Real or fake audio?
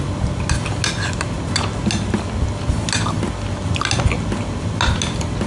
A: real